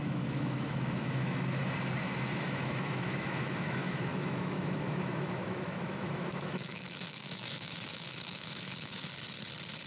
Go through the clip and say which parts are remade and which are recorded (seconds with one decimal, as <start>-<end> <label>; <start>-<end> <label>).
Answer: 0.0-1.6 remade; 1.6-2.3 recorded; 2.3-9.0 remade; 9.0-9.9 recorded

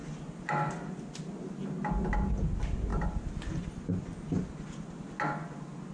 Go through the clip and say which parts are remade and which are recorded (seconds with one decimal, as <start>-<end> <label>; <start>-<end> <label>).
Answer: 0.0-5.9 recorded

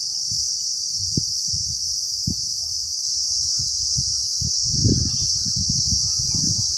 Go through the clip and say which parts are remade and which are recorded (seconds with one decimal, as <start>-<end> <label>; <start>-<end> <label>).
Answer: 0.0-6.8 recorded

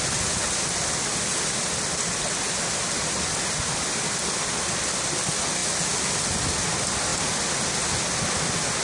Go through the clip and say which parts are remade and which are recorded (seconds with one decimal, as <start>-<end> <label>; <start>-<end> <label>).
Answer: 0.0-8.8 recorded

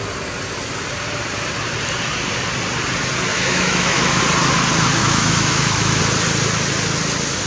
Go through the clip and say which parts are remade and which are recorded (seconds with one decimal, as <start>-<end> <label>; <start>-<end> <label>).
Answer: 0.0-3.3 recorded; 3.3-4.2 remade; 4.2-5.0 recorded; 5.0-6.0 remade; 6.0-7.5 recorded